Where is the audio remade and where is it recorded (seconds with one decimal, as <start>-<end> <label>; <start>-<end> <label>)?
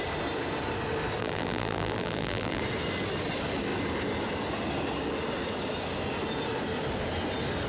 0.0-1.2 recorded; 1.2-2.6 remade; 2.6-7.7 recorded